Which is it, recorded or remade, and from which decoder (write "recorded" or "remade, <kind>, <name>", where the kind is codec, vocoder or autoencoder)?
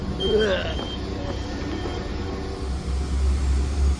recorded